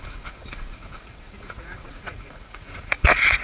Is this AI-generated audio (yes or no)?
yes